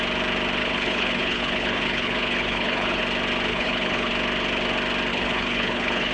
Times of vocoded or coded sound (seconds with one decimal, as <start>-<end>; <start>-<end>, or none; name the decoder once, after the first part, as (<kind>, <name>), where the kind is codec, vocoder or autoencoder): 0.6-3.0 (codec, HILCodec); 3.5-4.1; 5.1-6.1